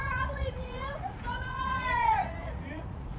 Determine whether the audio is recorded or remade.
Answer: remade